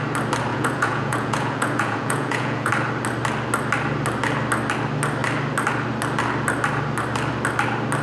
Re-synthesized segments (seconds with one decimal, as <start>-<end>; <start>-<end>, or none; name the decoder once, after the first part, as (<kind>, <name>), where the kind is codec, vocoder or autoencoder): 0.5-2.7 (vocoder, Vocos)